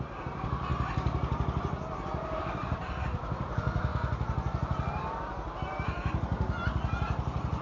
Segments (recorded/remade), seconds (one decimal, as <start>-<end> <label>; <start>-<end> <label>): 0.0-0.7 remade; 0.7-2.4 recorded; 2.4-3.9 remade; 3.9-7.6 recorded

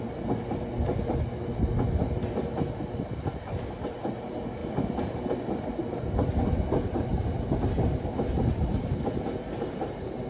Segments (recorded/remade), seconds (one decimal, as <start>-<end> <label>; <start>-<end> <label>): 0.0-4.6 recorded; 4.6-5.1 remade; 5.1-10.3 recorded

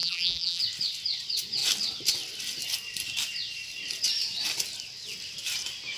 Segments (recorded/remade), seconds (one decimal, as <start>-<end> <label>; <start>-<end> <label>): 0.0-0.6 remade; 0.6-6.0 recorded